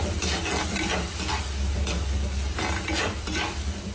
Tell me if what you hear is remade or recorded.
recorded